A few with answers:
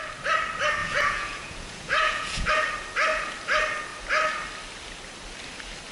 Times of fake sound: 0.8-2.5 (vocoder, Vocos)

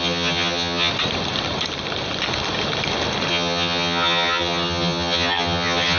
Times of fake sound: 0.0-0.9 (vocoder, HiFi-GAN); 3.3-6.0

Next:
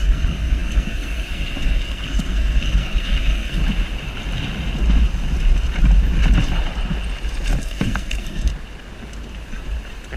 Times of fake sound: 0.0-3.6 (codec, SNAC); 7.6-8.5

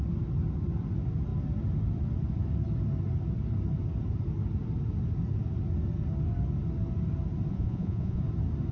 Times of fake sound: 7.5-8.2 (vocoder, Vocos)

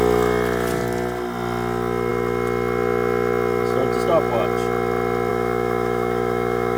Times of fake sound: 5.3-6.8 (autoencoder, DAC-VAE)

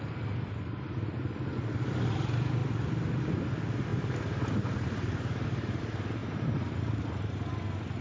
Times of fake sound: 3.9-5.8 (vocoder, BigVGAN v2); 6.2-7.2

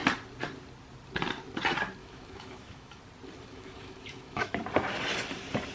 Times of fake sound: 2.0-3.0 (autoencoder, DAC-VAE); 3.5-4.6